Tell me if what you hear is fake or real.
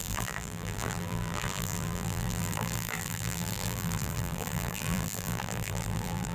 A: fake